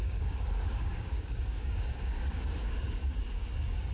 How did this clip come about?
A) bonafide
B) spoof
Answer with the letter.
B